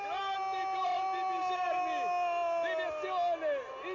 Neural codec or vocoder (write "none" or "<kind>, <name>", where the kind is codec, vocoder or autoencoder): none